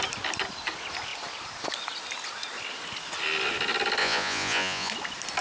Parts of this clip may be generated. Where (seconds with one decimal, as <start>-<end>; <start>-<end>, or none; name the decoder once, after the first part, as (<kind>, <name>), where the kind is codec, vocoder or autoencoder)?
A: 4.0-4.9 (vocoder, Vocos)